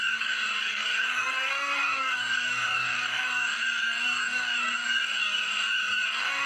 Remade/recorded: remade